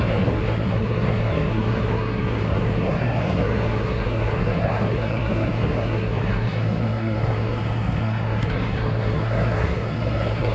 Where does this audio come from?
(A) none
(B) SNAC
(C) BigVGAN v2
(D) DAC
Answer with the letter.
B